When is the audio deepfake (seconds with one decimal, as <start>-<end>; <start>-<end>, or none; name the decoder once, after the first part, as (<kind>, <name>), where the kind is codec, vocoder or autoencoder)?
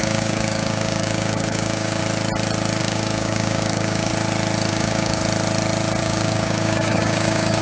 0.0-2.0 (codec, DAC); 2.8-4.1; 4.7-5.2; 6.0-7.6